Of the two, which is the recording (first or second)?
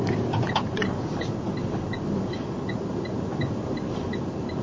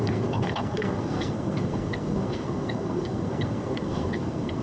first